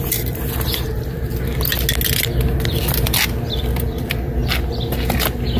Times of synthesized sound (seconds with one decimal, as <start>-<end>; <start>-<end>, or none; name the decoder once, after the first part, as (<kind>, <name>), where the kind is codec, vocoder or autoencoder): 0.0-1.7 (vocoder, BigVGAN v2); 2.7-4.4